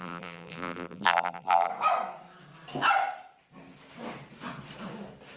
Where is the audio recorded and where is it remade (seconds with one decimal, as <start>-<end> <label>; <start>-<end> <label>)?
0.0-1.7 remade; 1.7-5.4 recorded